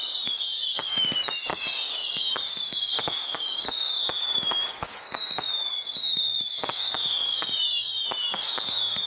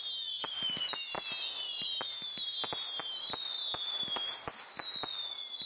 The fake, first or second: first